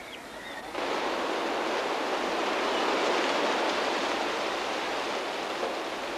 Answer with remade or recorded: recorded